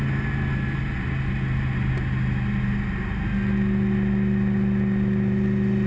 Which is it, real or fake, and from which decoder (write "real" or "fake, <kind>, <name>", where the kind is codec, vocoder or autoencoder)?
real